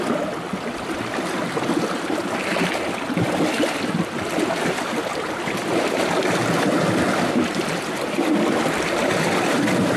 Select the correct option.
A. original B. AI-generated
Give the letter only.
A